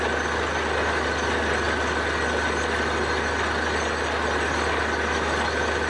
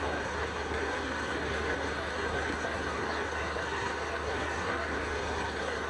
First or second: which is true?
first